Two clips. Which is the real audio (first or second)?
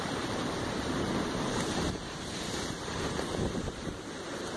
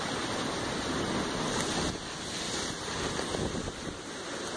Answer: second